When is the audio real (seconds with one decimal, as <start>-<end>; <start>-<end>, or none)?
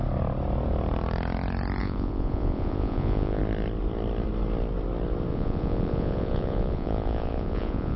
0.0-1.8; 3.4-5.3